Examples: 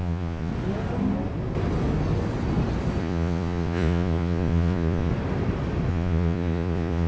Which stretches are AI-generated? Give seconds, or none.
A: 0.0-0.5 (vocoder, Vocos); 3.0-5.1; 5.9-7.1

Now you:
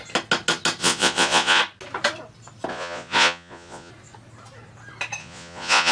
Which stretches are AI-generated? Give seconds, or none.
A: 0.8-1.6 (vocoder, Vocos); 2.7-3.9; 5.2-5.9

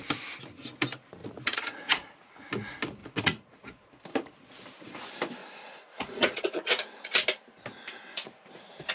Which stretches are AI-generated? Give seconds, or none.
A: 1.2-2.3 (vocoder, Vocos); 3.0-3.9; 5.4-7.1; 8.2-8.9

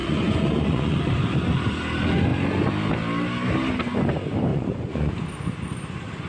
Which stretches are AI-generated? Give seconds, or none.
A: 0.0-1.0 (vocoder, Vocos); 4.5-5.1

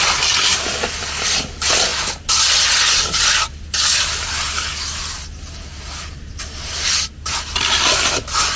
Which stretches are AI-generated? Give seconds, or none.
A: none

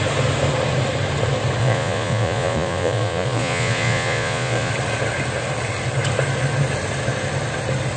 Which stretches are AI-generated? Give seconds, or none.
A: 1.6-4.7 (vocoder, Vocos)